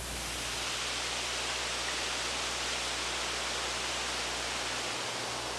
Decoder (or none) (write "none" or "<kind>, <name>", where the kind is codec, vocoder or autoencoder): none